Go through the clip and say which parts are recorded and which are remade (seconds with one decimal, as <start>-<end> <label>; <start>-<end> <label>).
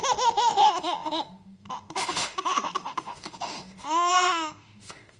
0.0-5.2 remade